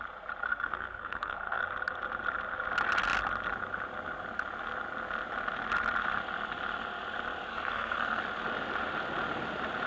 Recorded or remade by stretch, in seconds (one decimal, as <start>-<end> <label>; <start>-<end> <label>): 0.0-0.4 recorded; 0.4-1.6 remade; 1.6-7.5 recorded; 7.5-8.2 remade; 8.2-9.9 recorded